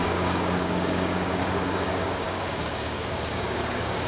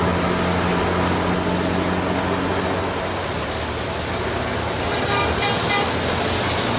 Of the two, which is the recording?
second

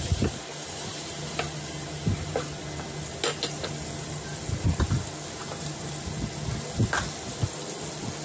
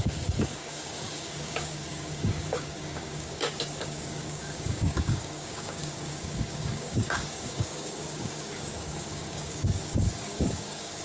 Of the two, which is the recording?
first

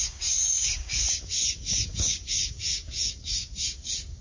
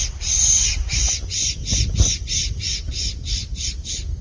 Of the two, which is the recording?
second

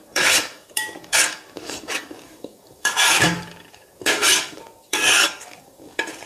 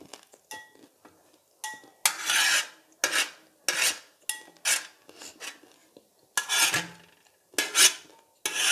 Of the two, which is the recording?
second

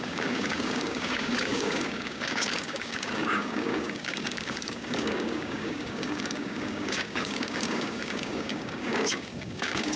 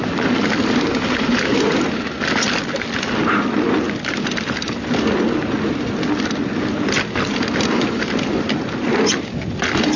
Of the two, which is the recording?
second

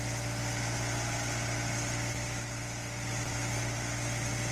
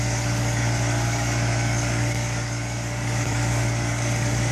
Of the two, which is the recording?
first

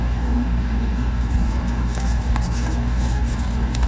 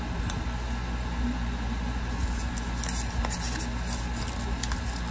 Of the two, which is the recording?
second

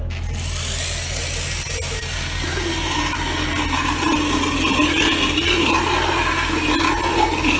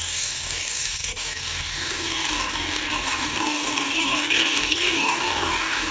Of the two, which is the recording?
first